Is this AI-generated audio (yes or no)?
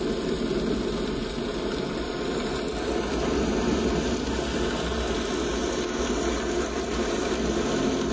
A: no